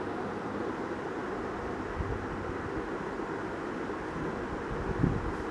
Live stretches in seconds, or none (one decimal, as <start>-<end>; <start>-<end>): 0.0-5.5